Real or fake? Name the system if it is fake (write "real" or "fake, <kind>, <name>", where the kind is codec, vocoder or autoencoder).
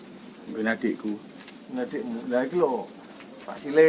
real